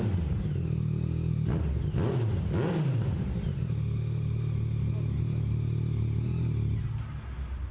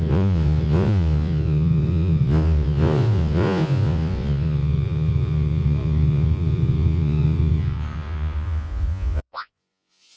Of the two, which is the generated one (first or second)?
second